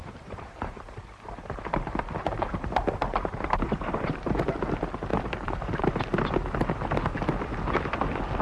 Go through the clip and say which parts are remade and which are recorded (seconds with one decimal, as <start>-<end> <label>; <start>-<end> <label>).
0.0-4.4 remade; 4.4-5.1 recorded; 5.1-5.8 remade; 5.8-8.4 recorded